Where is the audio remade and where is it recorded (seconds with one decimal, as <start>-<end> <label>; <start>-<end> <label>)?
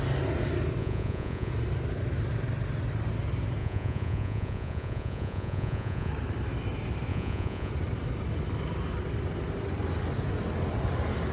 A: 0.0-0.8 recorded; 0.8-1.5 remade; 1.5-3.6 recorded; 3.6-6.1 remade; 6.1-7.1 recorded; 7.1-7.7 remade; 7.7-11.3 recorded